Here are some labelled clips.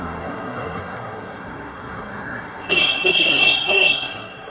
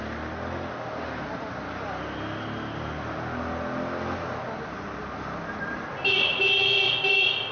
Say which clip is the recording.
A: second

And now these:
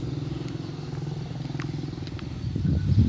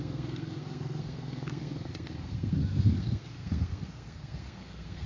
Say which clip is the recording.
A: first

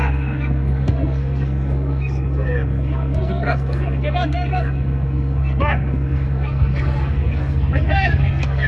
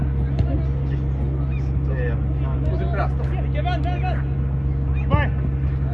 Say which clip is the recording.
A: second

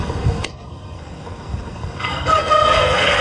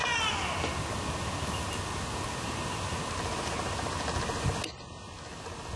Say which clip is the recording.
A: second